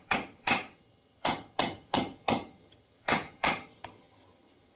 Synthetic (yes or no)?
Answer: yes